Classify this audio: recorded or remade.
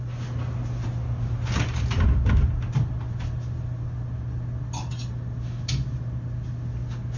recorded